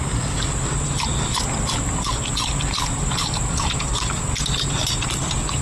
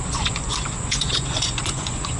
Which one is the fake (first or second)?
second